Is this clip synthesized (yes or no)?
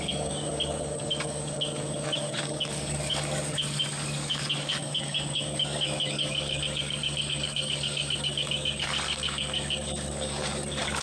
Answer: yes